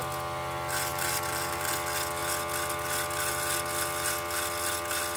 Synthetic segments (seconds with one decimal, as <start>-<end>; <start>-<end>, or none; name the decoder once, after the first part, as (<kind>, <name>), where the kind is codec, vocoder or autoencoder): 0.9-1.7 (vocoder, BigVGAN v2)